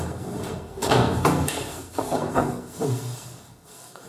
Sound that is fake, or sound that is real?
fake